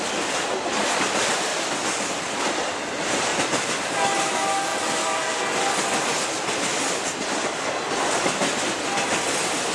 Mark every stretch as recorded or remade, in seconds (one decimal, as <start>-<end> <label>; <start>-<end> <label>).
0.0-4.7 recorded; 4.7-5.2 remade; 5.2-9.7 recorded